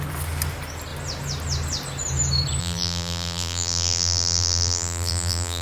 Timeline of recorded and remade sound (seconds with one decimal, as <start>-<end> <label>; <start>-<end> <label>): 0.0-2.6 recorded; 2.6-5.6 remade